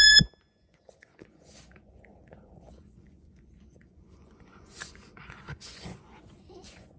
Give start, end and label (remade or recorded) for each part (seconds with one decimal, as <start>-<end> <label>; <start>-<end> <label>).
0.0-7.0 remade